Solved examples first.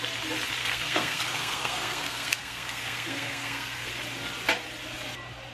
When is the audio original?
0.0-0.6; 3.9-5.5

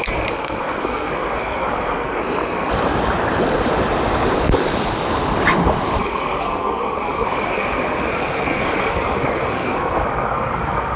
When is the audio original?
2.7-6.0

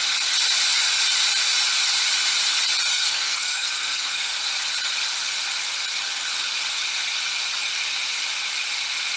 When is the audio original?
0.0-2.9; 4.3-9.2

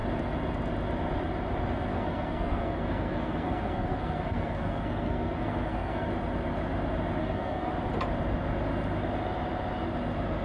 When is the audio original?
0.0-1.9; 6.1-7.2; 7.7-10.4

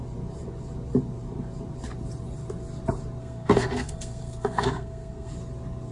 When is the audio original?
0.0-3.2; 5.3-5.9

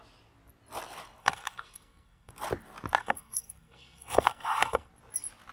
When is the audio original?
0.0-1.2; 2.3-3.0; 4.9-5.5